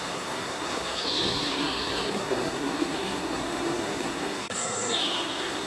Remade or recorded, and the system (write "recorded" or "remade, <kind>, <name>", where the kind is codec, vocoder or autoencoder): remade, codec, SNAC